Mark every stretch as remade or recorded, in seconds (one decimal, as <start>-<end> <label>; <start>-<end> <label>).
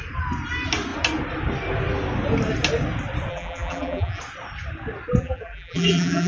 0.0-3.3 recorded; 3.3-4.2 remade; 4.2-5.2 recorded; 5.2-6.3 remade